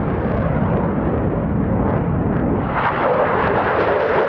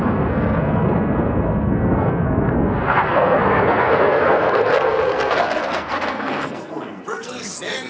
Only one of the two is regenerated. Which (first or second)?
second